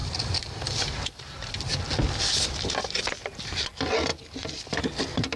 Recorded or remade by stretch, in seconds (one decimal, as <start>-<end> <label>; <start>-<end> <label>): 0.0-2.2 remade; 2.2-4.1 recorded; 4.1-4.8 remade; 4.8-5.4 recorded